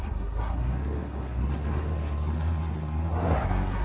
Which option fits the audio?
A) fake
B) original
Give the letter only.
A